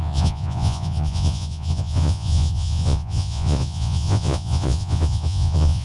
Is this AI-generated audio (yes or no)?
yes